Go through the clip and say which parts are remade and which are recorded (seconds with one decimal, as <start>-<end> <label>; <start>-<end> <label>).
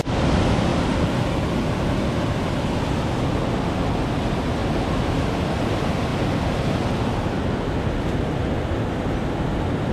0.0-9.9 recorded